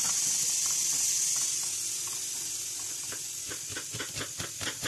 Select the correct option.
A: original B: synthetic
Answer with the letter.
A